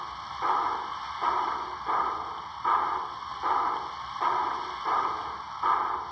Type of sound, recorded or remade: recorded